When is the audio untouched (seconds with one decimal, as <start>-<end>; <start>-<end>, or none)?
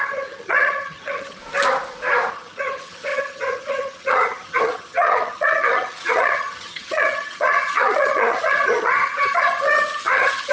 1.4-2.3